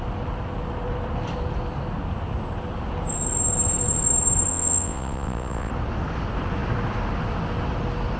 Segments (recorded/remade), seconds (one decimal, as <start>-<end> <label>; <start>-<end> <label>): 0.0-4.5 recorded; 4.5-5.7 remade; 5.7-8.2 recorded